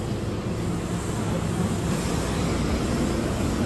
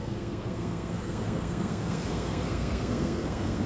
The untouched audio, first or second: first